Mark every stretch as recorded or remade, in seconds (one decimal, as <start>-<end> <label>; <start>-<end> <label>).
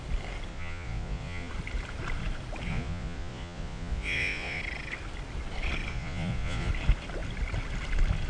0.0-0.5 recorded; 0.5-1.5 remade; 1.5-2.7 recorded; 2.7-4.6 remade; 4.6-5.9 recorded; 5.9-6.7 remade; 6.7-8.3 recorded